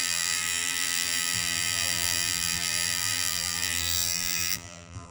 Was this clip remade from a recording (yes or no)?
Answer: yes